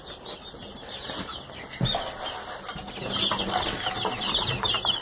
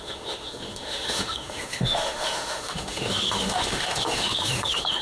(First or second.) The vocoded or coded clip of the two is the second